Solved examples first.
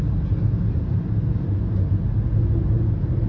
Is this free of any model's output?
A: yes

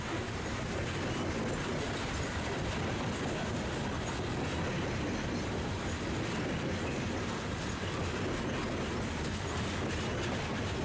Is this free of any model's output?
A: yes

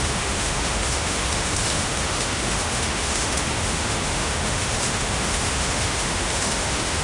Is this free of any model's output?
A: no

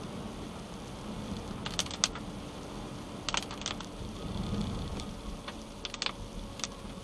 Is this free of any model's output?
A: yes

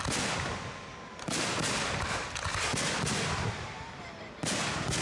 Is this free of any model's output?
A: yes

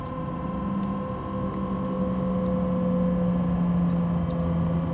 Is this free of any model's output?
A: yes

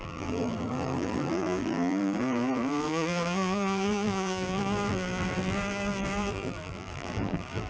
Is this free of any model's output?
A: no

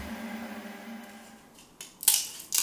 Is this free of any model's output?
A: yes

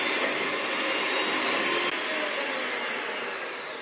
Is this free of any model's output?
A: yes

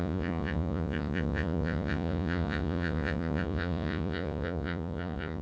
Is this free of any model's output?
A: no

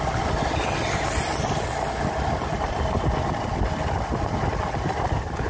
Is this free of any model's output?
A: yes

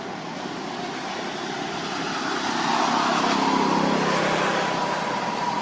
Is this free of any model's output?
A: yes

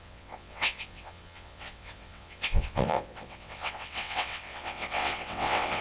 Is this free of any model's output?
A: no